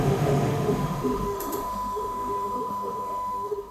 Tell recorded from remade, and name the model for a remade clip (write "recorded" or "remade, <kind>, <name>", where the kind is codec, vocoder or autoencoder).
remade, autoencoder, DAC-VAE